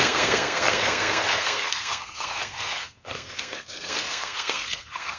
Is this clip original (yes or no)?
no